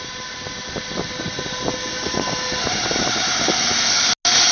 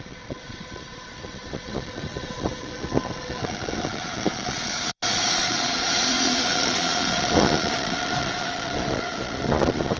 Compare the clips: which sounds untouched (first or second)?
first